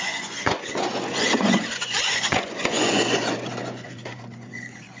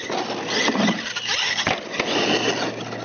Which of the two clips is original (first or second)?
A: second